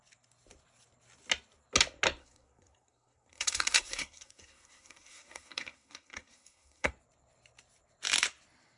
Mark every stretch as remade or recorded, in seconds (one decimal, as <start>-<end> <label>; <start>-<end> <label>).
0.0-2.2 recorded; 2.2-6.9 remade; 6.9-8.8 recorded